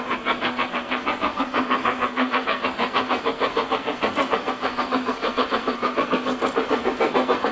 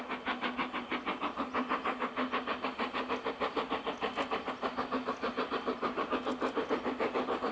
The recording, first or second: second